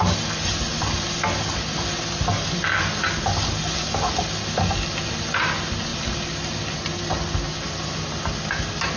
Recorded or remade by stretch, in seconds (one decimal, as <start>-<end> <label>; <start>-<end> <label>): 0.0-9.0 recorded